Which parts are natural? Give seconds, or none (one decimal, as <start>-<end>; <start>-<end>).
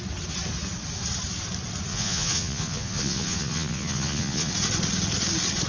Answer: 0.0-1.9; 4.5-5.7